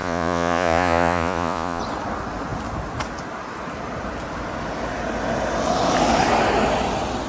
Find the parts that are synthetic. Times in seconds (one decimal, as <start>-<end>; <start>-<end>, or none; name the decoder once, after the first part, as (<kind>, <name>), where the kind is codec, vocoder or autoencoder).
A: 0.0-1.8 (vocoder, Vocos)